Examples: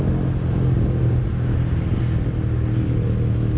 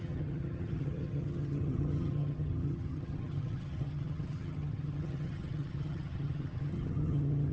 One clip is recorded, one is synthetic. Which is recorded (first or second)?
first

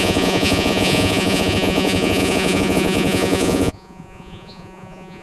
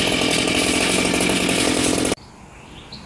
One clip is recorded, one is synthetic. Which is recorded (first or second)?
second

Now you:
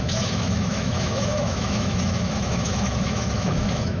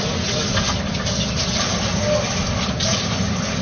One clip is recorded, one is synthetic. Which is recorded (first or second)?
second